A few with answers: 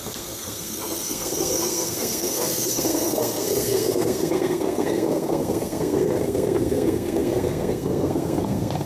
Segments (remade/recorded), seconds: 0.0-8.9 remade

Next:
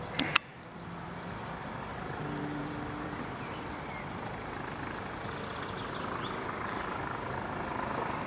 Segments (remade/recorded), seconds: 0.0-0.5 recorded; 0.5-1.6 remade; 1.6-2.6 recorded; 2.6-3.9 remade; 3.9-8.3 recorded

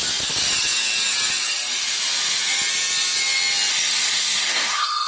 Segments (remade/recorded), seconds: 0.0-3.7 recorded; 3.7-5.1 remade

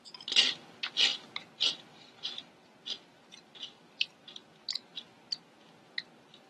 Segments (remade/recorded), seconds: 0.0-6.5 recorded

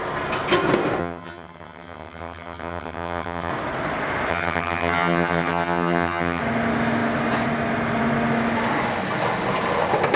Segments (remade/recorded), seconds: 0.0-1.0 recorded; 1.0-3.5 remade; 3.5-4.3 recorded; 4.3-6.4 remade; 6.4-10.2 recorded

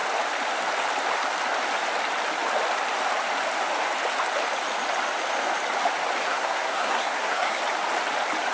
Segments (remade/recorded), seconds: 0.0-6.2 recorded; 6.2-7.6 remade; 7.6-8.5 recorded

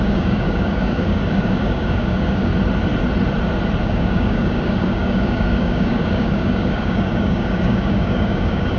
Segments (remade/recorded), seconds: 0.0-2.5 remade; 2.5-3.8 recorded; 3.8-8.8 remade